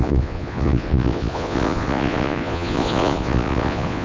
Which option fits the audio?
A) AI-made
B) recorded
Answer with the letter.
A